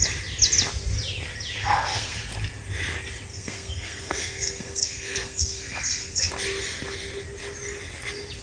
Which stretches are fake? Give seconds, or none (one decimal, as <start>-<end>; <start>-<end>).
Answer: 1.6-2.2; 3.3-6.3